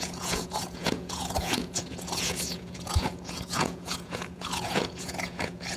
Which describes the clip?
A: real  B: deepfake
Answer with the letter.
B